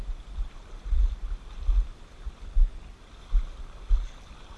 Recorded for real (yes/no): yes